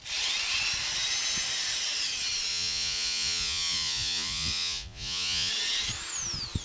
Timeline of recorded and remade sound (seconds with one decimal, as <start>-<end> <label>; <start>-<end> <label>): 0.0-2.5 recorded; 2.5-5.5 remade; 5.5-6.6 recorded